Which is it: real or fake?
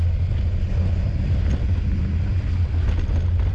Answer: real